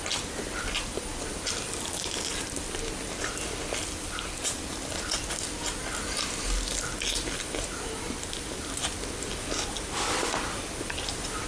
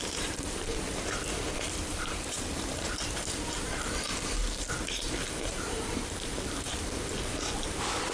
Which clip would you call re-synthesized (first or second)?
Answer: second